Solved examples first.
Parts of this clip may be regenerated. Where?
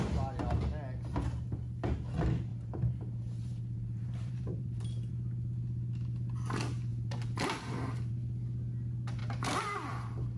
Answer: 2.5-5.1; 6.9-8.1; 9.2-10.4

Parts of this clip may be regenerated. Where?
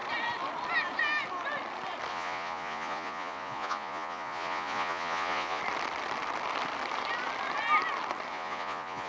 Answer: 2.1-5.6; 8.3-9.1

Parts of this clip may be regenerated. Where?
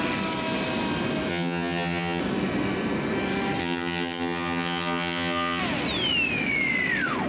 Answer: 1.3-2.2; 3.6-5.6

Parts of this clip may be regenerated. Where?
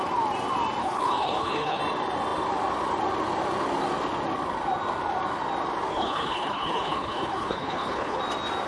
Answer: 0.8-1.8; 5.9-8.2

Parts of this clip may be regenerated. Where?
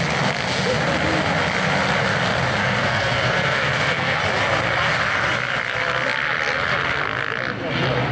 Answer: 2.6-4.2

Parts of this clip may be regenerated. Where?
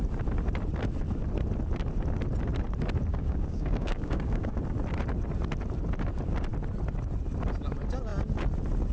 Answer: 3.1-4.6